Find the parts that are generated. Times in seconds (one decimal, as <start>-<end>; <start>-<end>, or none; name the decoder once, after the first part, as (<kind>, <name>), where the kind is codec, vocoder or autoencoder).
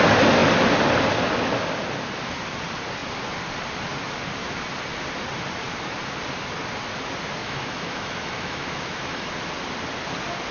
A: 7.4-9.3 (autoencoder, DAC-VAE)